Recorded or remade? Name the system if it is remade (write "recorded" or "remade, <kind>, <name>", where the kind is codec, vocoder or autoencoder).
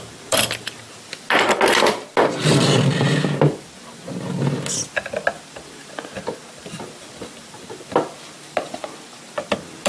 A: recorded